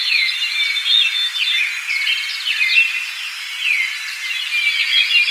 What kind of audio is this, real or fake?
real